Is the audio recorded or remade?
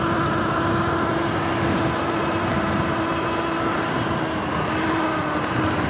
recorded